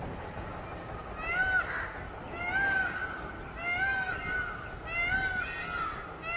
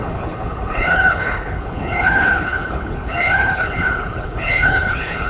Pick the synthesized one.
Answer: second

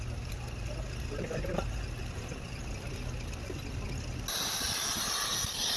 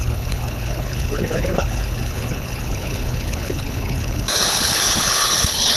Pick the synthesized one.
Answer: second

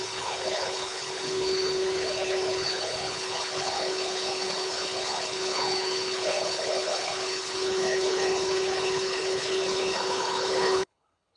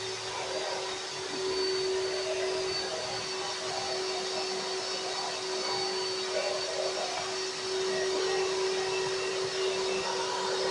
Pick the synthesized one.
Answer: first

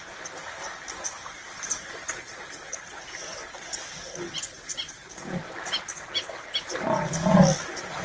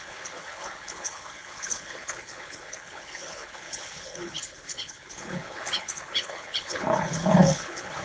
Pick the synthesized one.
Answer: second